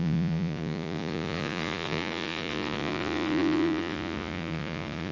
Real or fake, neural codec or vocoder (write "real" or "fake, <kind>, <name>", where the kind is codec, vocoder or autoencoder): fake, vocoder, Vocos